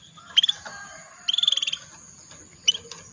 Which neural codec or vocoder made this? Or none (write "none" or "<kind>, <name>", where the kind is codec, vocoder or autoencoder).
none